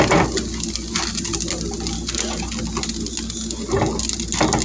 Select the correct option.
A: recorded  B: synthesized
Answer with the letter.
A